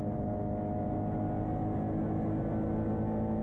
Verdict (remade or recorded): recorded